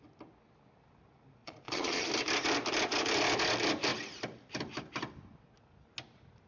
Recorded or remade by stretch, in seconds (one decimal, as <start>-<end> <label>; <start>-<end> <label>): 0.0-1.4 recorded; 1.4-2.1 remade; 2.1-6.5 recorded